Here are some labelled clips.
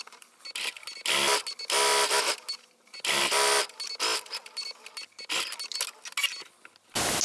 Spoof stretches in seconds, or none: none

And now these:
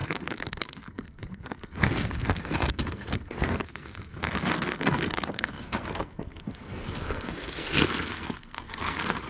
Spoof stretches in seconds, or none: 0.0-9.3 (codec, SNAC)

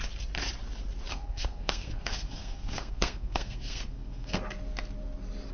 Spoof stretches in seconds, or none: 1.1-4.4 (codec, SNAC)